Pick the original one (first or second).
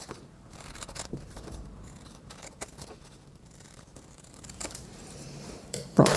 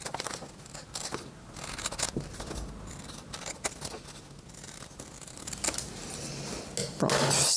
second